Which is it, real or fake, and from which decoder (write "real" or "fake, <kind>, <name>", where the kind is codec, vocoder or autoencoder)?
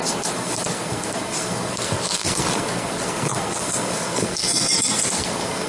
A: fake, codec, SNAC